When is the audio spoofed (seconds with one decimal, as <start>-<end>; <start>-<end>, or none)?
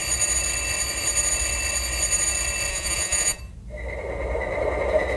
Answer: 2.7-3.4